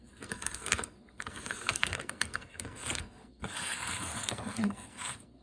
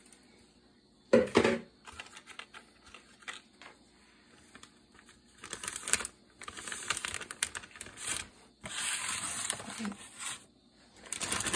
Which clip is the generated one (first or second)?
first